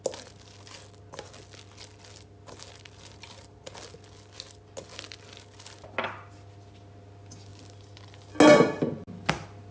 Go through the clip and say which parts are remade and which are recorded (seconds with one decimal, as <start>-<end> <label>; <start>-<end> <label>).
0.0-9.7 recorded